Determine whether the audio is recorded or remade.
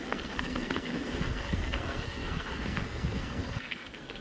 remade